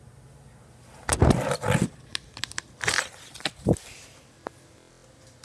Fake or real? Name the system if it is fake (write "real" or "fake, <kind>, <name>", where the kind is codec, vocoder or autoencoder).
real